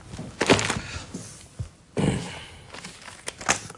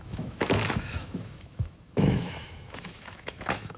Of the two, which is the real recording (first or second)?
first